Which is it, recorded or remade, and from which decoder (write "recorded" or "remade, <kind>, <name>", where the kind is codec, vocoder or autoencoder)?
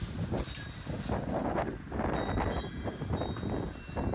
recorded